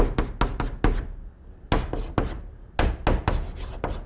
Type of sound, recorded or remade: recorded